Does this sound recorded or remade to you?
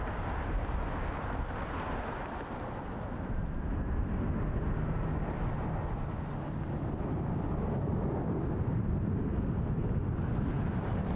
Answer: recorded